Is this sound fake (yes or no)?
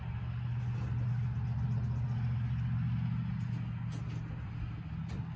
no